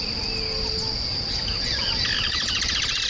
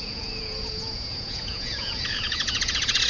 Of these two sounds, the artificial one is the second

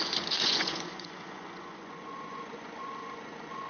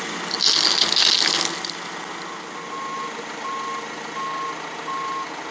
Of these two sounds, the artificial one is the first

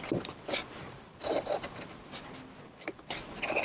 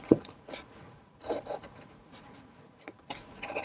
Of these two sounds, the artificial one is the second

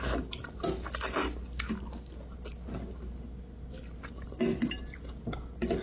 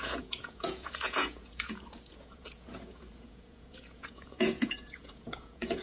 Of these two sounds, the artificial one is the second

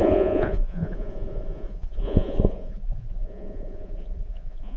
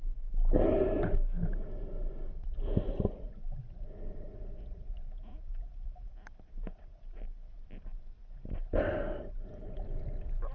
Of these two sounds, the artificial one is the first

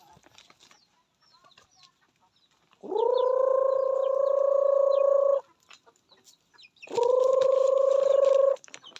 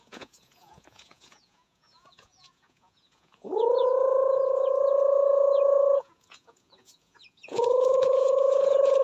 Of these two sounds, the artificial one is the second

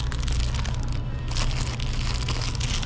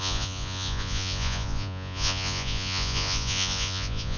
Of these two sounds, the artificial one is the second